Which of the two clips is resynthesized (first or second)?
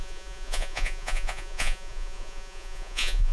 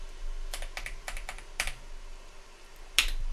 first